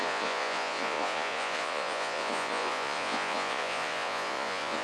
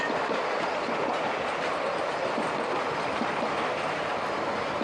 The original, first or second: second